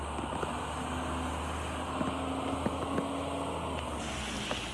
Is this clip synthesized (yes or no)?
no